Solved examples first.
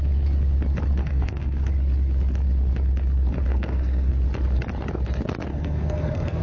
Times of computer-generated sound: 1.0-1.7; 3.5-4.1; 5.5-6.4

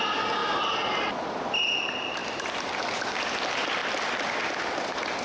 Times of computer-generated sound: none

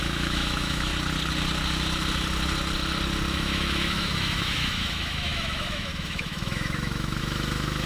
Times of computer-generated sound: 0.0-0.9; 3.3-7.9